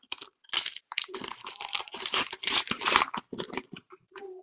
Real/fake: fake